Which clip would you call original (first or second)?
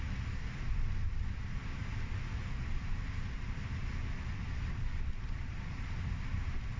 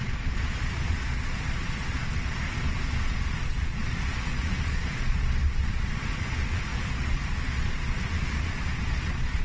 first